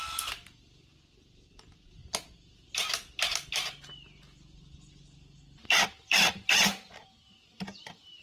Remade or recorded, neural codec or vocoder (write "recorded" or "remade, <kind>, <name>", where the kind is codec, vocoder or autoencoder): recorded